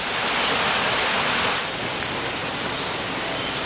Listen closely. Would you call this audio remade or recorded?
recorded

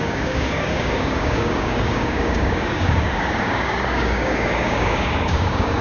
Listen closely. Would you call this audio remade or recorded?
remade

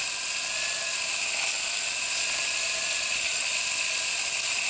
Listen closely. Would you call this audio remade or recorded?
recorded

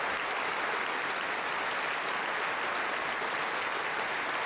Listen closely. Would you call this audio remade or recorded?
recorded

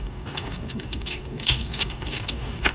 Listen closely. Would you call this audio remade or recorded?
remade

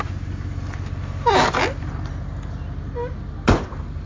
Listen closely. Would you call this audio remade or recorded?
recorded